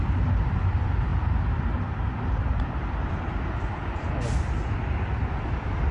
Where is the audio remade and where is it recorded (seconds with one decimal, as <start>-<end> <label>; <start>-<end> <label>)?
0.0-5.9 recorded